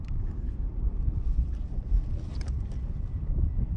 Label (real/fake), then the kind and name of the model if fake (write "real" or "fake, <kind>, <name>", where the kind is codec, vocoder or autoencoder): fake, vocoder, BigVGAN v2